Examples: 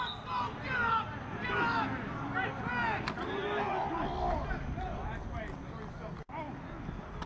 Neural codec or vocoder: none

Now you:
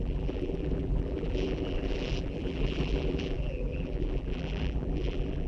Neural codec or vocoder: vocoder, BigVGAN v2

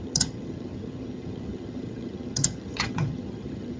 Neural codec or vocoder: vocoder, HiFi-GAN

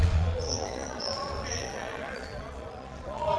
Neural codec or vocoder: vocoder, Vocos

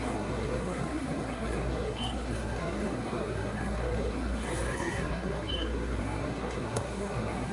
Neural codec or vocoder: codec, SNAC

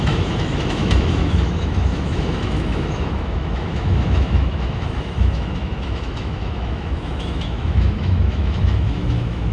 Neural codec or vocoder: autoencoder, DAC-VAE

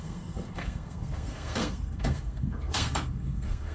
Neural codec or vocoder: codec, SNAC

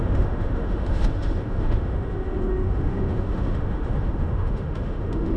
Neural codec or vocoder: autoencoder, DAC-VAE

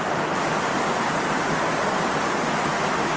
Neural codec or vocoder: none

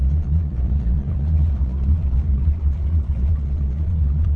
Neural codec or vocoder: vocoder, Vocos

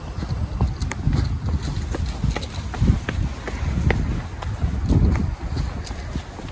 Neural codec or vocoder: none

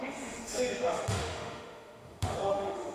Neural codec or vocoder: autoencoder, DAC-VAE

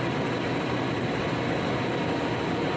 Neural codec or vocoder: none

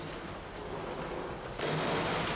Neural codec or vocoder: none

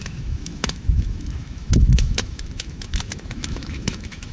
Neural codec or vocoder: autoencoder, DAC-VAE